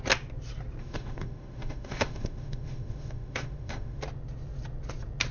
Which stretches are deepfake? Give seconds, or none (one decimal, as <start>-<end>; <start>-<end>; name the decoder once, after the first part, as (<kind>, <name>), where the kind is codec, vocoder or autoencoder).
0.8-4.0 (autoencoder, DAC-VAE)